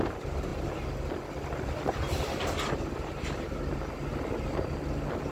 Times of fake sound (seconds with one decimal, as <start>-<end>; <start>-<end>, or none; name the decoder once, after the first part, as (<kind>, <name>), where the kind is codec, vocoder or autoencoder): none